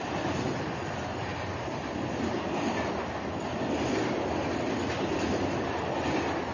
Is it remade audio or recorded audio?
recorded